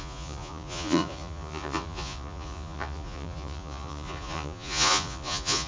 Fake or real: fake